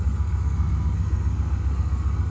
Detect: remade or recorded remade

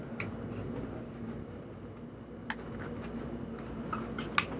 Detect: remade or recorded recorded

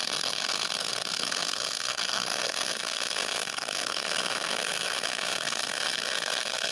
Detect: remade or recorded remade